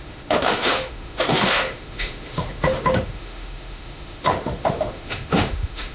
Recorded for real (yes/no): no